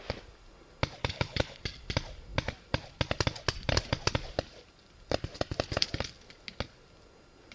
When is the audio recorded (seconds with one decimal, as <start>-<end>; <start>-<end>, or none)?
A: 0.0-1.0; 1.6-7.5